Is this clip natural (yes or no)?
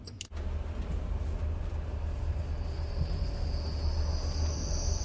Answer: yes